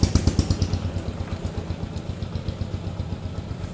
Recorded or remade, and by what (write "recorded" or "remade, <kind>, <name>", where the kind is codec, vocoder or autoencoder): recorded